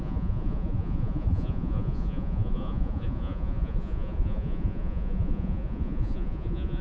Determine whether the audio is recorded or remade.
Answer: remade